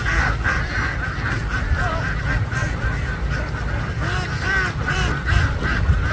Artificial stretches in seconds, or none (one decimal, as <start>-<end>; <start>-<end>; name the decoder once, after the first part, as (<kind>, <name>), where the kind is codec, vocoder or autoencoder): none